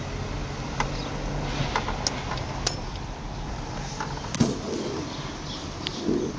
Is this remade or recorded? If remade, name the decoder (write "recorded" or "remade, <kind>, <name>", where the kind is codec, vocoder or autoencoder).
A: recorded